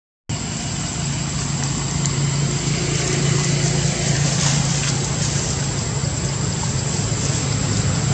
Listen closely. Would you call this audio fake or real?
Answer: real